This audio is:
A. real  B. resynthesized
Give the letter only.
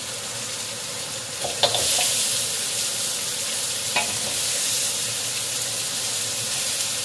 A